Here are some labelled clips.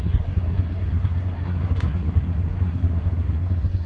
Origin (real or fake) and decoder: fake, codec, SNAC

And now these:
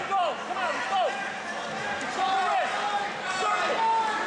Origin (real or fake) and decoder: real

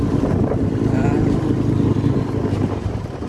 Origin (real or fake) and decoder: real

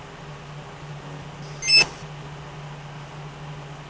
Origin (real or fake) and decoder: real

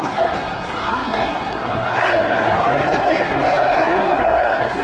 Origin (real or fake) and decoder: fake, codec, SNAC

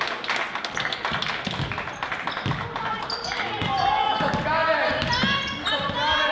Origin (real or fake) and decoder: real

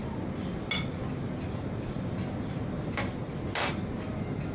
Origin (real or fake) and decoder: real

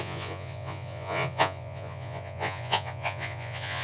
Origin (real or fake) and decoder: fake, vocoder, Vocos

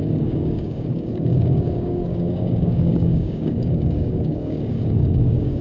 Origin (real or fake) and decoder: fake, codec, DAC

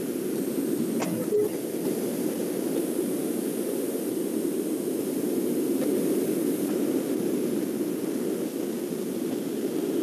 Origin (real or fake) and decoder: real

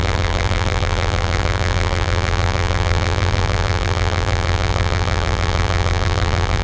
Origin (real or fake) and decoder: fake, vocoder, BigVGAN v2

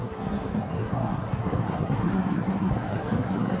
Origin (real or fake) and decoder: fake, codec, SNAC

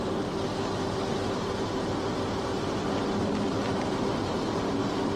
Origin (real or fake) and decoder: real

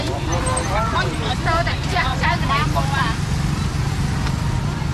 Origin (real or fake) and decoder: fake, vocoder, BigVGAN v2